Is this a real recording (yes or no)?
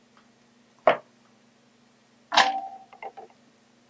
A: yes